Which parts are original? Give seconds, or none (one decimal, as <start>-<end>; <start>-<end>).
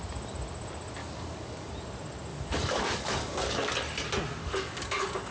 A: 0.0-1.0; 1.7-2.3; 3.7-4.4